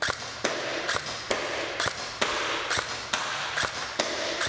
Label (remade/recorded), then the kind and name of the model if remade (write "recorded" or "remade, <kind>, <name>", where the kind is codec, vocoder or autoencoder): recorded